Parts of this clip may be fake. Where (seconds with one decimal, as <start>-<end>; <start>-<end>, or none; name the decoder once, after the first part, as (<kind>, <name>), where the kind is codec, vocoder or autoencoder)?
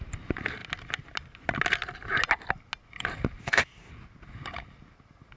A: 3.4-3.9 (codec, ZipCodec)